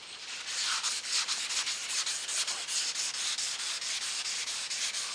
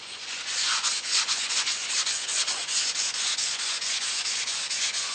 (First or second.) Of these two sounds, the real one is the first